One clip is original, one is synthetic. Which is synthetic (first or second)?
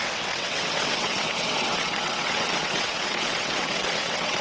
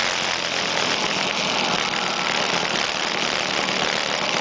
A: first